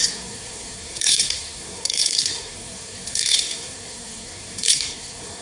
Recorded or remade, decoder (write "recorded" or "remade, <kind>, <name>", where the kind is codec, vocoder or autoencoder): remade, codec, SNAC